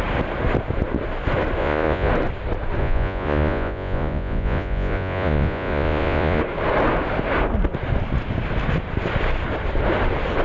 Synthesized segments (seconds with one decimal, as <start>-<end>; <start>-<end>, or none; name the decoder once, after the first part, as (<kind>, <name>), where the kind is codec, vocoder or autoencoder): 1.6-2.1 (vocoder, Vocos); 2.8-6.4